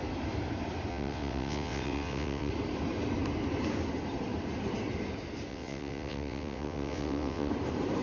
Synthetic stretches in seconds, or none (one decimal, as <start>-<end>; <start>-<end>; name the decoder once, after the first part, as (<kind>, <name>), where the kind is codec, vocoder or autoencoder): 0.9-2.5 (vocoder, WaveNeXt); 5.5-7.5

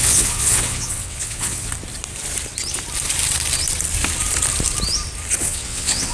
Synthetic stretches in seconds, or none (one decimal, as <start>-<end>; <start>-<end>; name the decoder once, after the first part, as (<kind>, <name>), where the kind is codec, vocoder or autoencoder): 0.0-1.7 (vocoder, WaveNeXt); 5.4-6.1

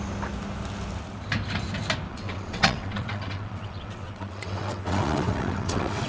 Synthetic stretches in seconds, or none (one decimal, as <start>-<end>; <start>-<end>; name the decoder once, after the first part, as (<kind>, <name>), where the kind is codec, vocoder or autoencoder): 2.1-6.1 (vocoder, WaveNeXt)

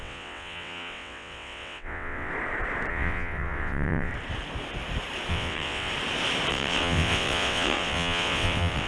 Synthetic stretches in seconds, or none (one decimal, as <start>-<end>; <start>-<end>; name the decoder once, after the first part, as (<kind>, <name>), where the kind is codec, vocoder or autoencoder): 0.0-2.3 (vocoder, WaveNeXt); 2.9-4.1; 5.3-5.9; 6.5-8.9

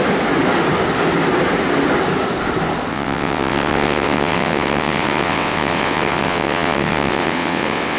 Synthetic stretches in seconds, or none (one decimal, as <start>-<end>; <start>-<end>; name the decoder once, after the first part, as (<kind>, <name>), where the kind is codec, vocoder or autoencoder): 2.9-8.0 (vocoder, WaveNeXt)

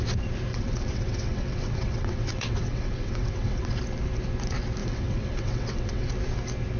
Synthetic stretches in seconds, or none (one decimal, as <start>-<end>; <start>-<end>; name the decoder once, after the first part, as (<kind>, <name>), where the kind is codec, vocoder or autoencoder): 0.5-3.8 (vocoder, WaveNeXt); 4.8-6.1